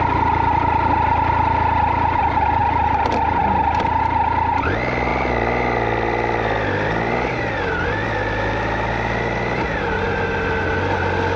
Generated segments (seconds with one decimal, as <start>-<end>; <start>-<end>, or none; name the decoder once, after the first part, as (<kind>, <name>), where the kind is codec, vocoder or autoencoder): none